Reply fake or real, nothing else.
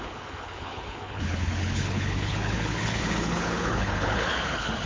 fake